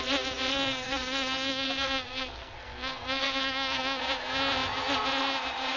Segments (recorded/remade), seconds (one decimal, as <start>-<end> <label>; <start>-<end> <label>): 0.0-0.5 recorded; 0.5-4.0 remade; 4.0-5.8 recorded